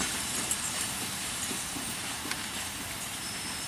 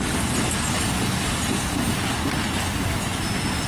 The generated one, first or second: first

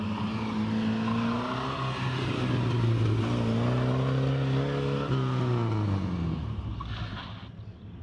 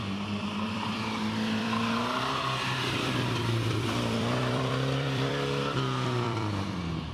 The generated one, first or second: second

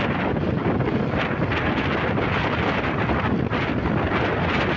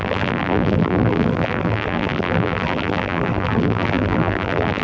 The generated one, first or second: second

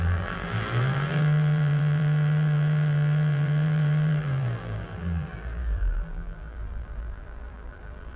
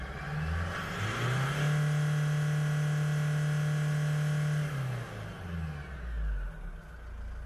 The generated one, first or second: first